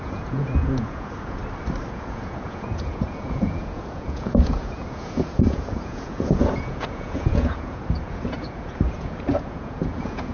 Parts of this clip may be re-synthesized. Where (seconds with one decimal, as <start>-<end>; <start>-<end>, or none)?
0.0-1.4; 1.9-10.3